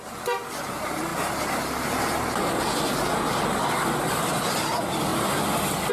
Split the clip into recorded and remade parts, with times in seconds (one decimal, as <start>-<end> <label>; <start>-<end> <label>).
0.0-5.9 recorded